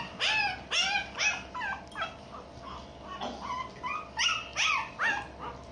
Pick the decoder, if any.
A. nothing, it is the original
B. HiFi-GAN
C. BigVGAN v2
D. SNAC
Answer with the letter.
A